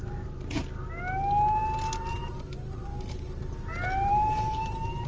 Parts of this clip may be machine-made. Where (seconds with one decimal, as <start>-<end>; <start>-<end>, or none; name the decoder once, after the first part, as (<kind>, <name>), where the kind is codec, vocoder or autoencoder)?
0.0-0.6 (vocoder, BigVGAN v2); 2.1-2.9; 4.1-5.1